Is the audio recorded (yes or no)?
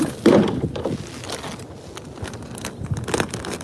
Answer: yes